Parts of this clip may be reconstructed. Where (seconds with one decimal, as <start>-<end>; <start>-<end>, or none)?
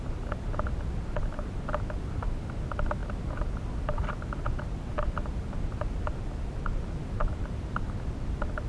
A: none